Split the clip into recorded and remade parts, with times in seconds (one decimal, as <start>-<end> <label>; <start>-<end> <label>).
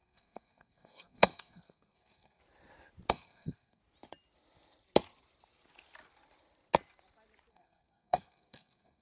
0.0-2.4 remade; 2.4-3.1 recorded; 3.1-3.8 remade; 3.8-7.5 recorded; 7.5-9.0 remade